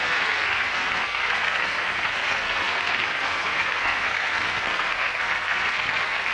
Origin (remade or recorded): remade